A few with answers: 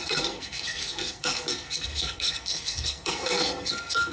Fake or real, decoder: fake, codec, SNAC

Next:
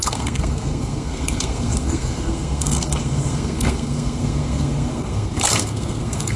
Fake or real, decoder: fake, codec, SNAC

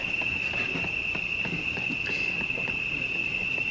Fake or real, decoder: real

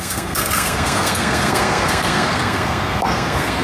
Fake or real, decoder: fake, codec, SNAC